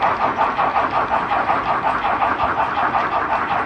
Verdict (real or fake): real